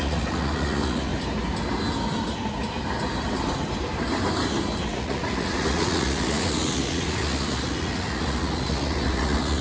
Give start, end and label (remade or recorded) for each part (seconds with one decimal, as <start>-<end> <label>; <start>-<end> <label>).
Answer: 0.0-1.1 remade; 1.1-4.8 recorded; 4.8-9.6 remade